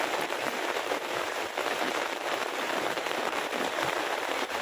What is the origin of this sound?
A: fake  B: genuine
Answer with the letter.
A